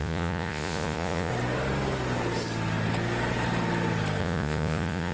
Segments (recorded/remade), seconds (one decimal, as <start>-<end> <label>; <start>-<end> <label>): 0.0-1.3 remade; 1.3-4.2 recorded; 4.2-5.1 remade